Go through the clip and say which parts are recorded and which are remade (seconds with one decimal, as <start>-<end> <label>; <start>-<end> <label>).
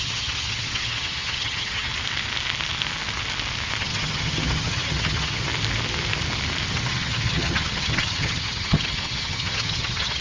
0.0-1.9 remade; 1.9-3.8 recorded; 3.8-5.5 remade; 5.5-6.7 recorded; 6.7-10.2 remade